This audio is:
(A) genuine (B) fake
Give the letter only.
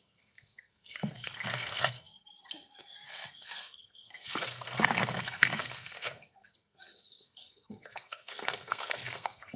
B